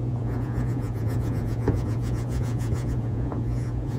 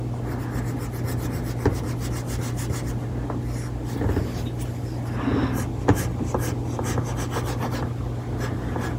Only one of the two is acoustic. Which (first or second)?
second